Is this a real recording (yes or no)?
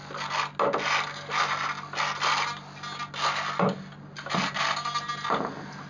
yes